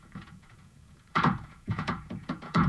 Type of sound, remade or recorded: remade